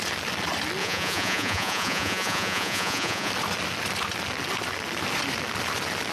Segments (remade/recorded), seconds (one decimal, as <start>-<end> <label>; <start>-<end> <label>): 0.0-0.8 recorded; 0.8-3.3 remade; 3.3-6.1 recorded